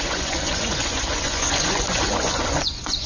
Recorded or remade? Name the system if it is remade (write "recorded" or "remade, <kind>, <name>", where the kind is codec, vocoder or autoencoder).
remade, vocoder, Vocos